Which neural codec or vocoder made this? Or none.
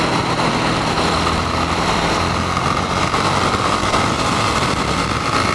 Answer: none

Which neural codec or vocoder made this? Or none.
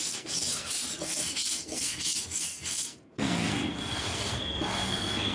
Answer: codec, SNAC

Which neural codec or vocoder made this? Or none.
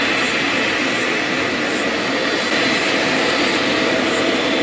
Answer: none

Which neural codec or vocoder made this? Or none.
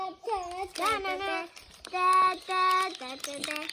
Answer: none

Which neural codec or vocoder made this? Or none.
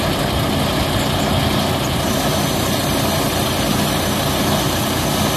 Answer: none